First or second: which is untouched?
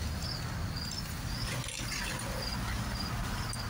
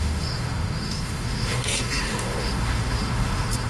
first